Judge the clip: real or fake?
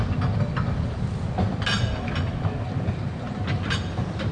real